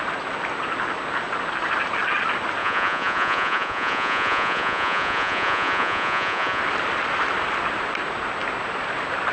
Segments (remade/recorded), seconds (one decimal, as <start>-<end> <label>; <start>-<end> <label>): 0.0-2.6 recorded; 2.6-6.6 remade; 6.6-9.3 recorded